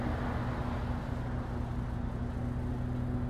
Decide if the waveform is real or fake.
real